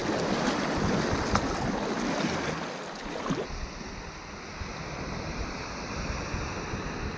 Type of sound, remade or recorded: recorded